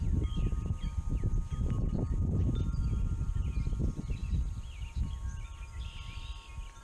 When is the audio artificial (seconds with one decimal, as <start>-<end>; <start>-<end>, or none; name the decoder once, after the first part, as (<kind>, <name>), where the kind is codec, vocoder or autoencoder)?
0.5-3.5 (vocoder, BigVGAN v2)